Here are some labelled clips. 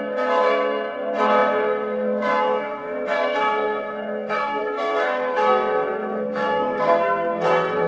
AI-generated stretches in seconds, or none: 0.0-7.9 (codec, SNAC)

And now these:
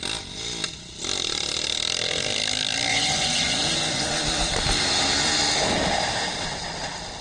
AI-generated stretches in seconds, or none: 2.9-4.1 (vocoder, Vocos)

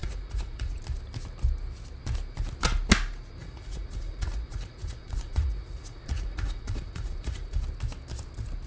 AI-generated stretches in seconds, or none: 0.0-0.8 (vocoder, Vocos); 3.4-7.6

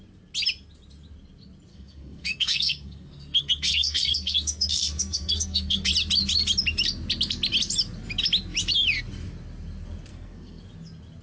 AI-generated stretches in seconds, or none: 1.7-5.9 (codec, SNAC); 10.1-10.6

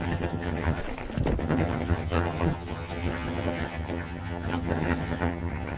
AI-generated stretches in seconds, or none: 0.0-0.8 (vocoder, HiFi-GAN); 1.4-5.8

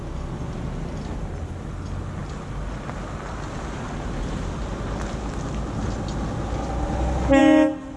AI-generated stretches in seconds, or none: none